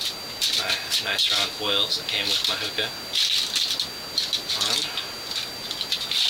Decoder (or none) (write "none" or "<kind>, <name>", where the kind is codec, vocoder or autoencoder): none